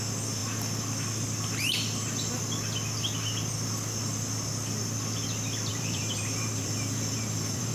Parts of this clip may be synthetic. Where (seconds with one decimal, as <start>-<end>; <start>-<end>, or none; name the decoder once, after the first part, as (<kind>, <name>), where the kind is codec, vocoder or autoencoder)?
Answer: 5.7-7.7 (vocoder, BigVGAN v2)